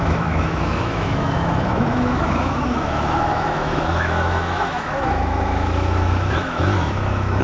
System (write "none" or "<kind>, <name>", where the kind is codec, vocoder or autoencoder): autoencoder, DAC-VAE